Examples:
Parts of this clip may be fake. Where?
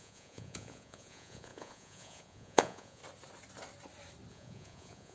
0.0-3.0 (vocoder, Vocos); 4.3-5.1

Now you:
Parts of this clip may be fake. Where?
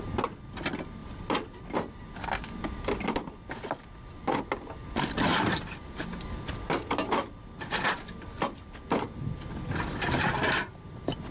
1.0-2.0 (vocoder, BigVGAN v2)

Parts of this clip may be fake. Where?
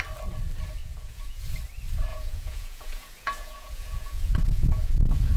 0.8-1.4 (vocoder, Vocos); 2.1-5.4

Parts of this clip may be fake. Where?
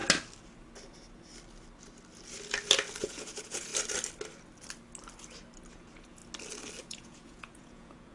3.0-3.7 (vocoder, Vocos); 5.7-6.2; 6.9-8.1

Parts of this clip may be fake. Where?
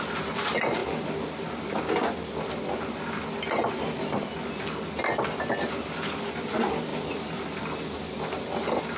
none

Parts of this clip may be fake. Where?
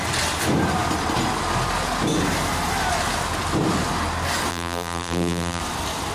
4.5-5.6 (vocoder, BigVGAN v2)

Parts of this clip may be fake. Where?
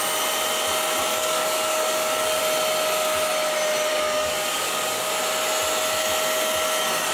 1.1-2.4 (codec, DAC); 3.9-5.1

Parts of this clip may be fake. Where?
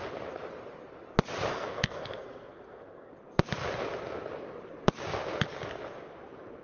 1.5-3.1 (codec, SNAC)